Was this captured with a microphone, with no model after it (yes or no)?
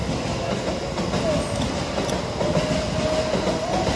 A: yes